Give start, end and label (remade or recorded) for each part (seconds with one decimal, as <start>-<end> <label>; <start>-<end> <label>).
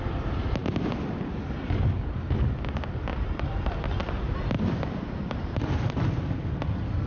0.0-3.1 recorded; 3.1-5.9 remade; 5.9-7.1 recorded